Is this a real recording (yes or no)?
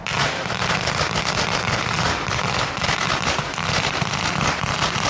no